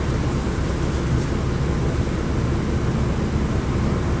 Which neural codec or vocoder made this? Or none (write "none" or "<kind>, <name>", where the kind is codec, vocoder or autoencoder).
none